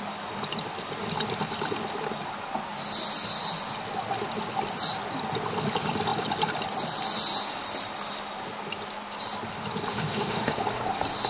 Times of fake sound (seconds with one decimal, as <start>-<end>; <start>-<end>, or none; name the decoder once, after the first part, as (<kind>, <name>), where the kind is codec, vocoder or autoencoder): 9.9-10.6 (autoencoder, DAC-VAE)